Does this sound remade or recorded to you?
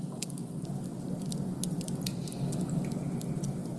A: recorded